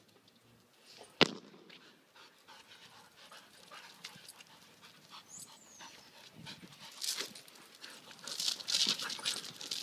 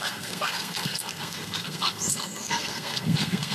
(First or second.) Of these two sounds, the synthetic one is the second